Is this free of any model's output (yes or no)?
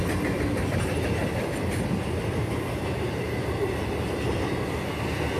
yes